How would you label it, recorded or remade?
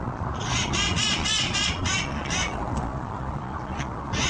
remade